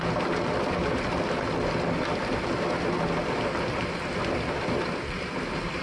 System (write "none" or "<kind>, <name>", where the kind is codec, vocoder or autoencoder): none